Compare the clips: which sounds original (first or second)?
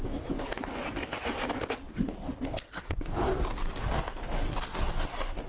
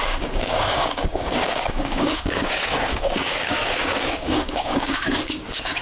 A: first